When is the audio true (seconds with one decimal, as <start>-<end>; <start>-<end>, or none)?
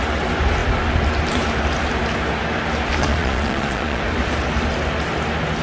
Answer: 0.0-3.0; 4.0-5.6